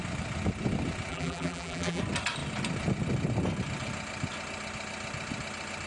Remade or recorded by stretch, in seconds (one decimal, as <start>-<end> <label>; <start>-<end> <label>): 0.0-1.1 recorded; 1.1-2.0 remade; 2.0-5.9 recorded